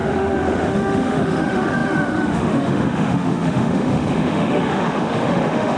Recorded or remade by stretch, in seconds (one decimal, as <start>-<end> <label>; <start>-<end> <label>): 0.0-5.8 remade

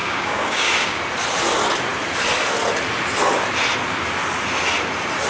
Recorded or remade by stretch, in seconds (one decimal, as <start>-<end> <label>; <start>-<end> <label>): 0.0-1.0 remade; 1.0-5.3 recorded

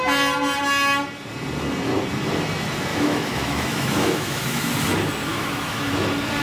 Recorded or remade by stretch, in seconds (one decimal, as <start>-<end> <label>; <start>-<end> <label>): 0.0-2.9 recorded; 2.9-4.7 remade; 4.7-5.3 recorded; 5.3-5.9 remade; 5.9-6.4 recorded

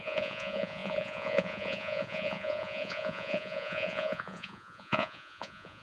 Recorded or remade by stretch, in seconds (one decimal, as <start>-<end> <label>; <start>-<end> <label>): 0.0-5.8 remade

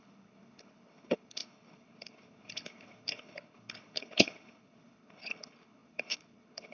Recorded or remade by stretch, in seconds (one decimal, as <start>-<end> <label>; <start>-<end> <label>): 0.0-6.7 remade

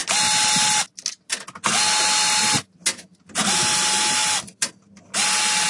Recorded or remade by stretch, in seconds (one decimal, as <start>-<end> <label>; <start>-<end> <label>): 0.0-4.2 recorded; 4.2-4.7 remade; 4.7-5.7 recorded

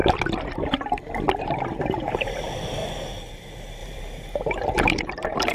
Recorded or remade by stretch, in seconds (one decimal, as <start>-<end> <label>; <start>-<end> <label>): 0.0-1.4 recorded; 1.4-2.8 remade; 2.8-3.3 recorded; 3.3-5.5 remade